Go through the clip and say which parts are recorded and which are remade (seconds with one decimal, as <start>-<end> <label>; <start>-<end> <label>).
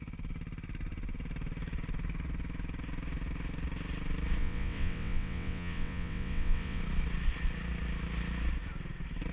0.0-4.4 recorded; 4.4-6.8 remade; 6.8-9.3 recorded